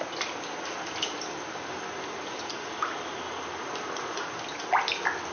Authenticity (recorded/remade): recorded